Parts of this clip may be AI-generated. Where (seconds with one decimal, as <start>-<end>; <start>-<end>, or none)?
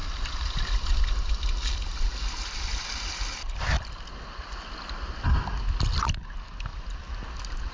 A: none